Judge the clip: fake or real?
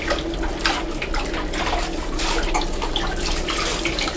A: real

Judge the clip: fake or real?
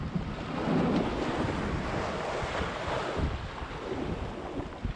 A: real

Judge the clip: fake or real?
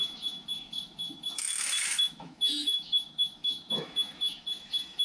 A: fake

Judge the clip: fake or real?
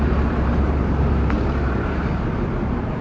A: fake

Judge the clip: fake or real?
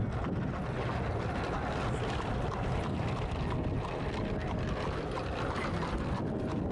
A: real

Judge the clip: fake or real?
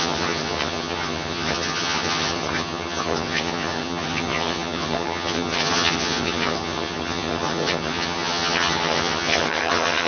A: fake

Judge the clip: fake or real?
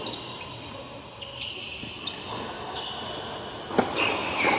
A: real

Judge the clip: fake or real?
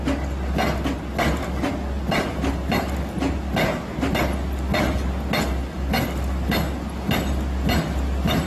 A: real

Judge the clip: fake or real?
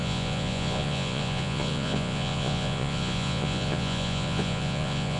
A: fake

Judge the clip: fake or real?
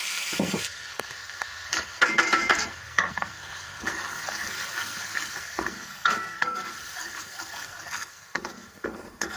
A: fake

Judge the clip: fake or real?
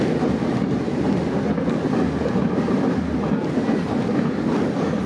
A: real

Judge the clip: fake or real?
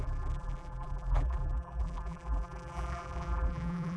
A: fake